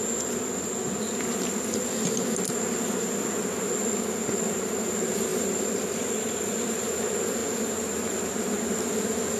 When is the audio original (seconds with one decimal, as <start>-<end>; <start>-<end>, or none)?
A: 0.0-9.4